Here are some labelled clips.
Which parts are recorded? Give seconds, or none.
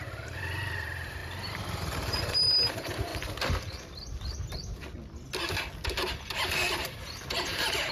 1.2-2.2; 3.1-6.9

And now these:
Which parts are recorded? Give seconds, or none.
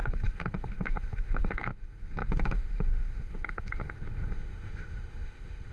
none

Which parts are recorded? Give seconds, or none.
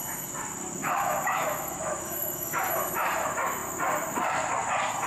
0.0-0.8; 2.7-5.1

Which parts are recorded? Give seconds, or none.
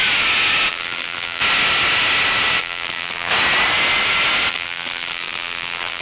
0.0-0.7; 1.4-2.6; 3.3-4.5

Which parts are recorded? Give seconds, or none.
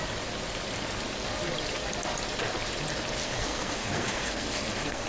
0.0-3.2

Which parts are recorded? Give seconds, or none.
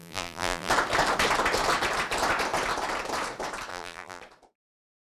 0.7-3.7; 4.2-5.0